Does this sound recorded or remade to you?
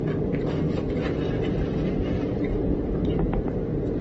recorded